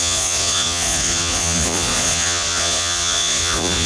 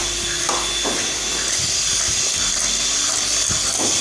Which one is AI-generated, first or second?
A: first